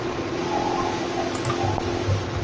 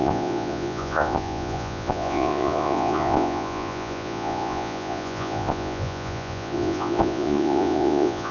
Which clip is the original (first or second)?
first